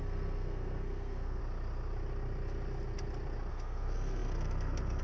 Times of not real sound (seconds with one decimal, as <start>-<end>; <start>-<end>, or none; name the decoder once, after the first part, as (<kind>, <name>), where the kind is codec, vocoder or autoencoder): 0.0-1.4 (codec, SNAC); 3.5-5.0